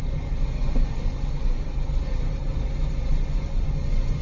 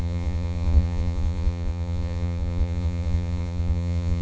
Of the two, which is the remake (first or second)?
second